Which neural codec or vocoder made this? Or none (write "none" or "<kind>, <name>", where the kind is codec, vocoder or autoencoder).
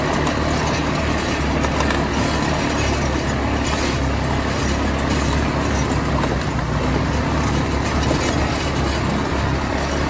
none